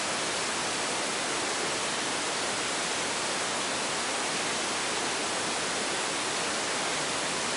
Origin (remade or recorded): recorded